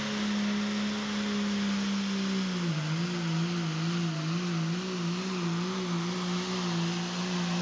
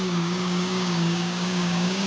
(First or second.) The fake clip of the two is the second